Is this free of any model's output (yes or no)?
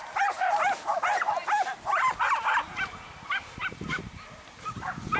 yes